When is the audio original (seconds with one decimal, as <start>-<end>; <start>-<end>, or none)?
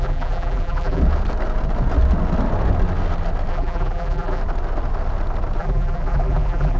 1.0-3.5; 4.4-5.6